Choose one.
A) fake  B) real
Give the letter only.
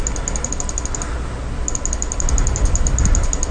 B